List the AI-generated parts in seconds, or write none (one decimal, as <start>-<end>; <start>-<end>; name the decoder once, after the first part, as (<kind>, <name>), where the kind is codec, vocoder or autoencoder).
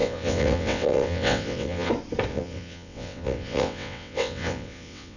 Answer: 0.0-1.9 (vocoder, WaveNeXt); 2.3-5.2